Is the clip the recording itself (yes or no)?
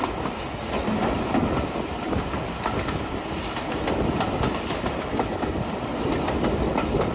yes